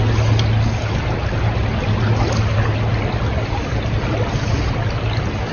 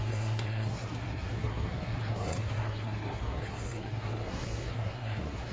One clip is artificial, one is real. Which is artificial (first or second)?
second